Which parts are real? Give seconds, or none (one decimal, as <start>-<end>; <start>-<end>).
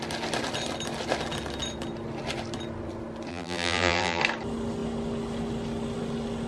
0.0-3.3; 4.2-6.5